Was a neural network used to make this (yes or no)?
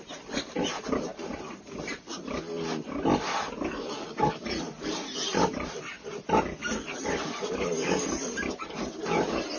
no